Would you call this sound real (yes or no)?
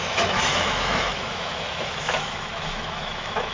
no